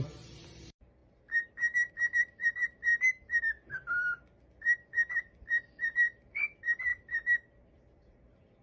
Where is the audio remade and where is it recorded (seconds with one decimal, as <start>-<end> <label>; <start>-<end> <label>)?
0.0-1.0 remade; 1.0-1.9 recorded; 1.9-2.9 remade; 2.9-3.4 recorded; 3.4-6.9 remade; 6.9-7.6 recorded; 7.6-8.6 remade